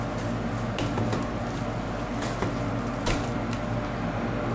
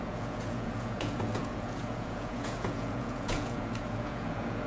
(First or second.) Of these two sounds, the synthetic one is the second